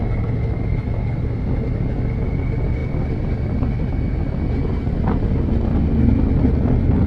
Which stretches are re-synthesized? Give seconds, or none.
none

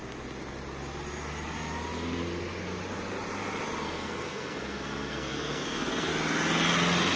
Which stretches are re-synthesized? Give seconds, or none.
3.8-6.1 (codec, SNAC)

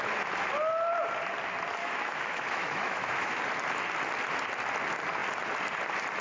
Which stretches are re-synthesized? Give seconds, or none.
1.8-3.4 (autoencoder, DAC-VAE)

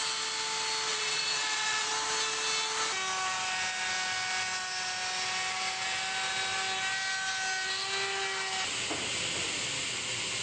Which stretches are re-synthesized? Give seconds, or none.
0.9-1.9 (vocoder, WaveNeXt)

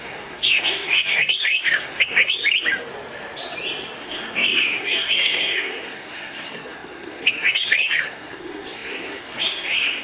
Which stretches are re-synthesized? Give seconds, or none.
0.0-2.4 (codec, SNAC); 4.0-10.0